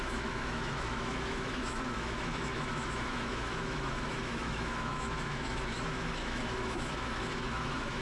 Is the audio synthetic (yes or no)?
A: yes